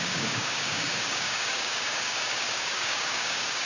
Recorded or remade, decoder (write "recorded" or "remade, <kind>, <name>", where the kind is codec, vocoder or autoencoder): remade, codec, DAC